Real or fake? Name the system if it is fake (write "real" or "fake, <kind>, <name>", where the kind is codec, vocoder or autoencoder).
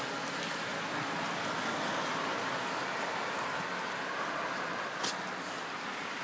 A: real